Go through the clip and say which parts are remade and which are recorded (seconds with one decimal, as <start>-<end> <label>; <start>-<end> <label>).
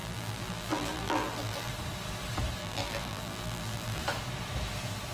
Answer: 0.0-1.7 remade; 1.7-2.6 recorded; 2.6-4.0 remade; 4.0-5.1 recorded